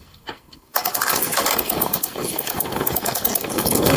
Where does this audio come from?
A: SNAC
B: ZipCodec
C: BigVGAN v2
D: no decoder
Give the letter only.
A